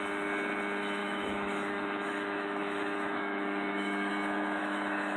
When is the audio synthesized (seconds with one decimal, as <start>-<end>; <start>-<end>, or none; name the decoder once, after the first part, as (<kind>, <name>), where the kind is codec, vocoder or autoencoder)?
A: 1.0-4.1 (autoencoder, DAC-VAE); 4.6-5.2